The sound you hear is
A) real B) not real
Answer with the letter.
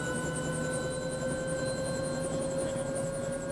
A